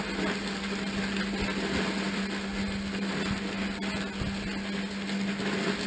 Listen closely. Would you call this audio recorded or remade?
recorded